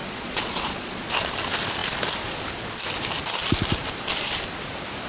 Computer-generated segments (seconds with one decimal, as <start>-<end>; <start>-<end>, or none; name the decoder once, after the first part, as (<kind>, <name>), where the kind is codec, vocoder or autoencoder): 0.0-1.1 (vocoder, Vocos)